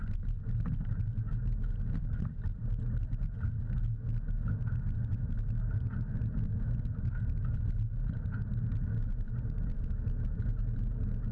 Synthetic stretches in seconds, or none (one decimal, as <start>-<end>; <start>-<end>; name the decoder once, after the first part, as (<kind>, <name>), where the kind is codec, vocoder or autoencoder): none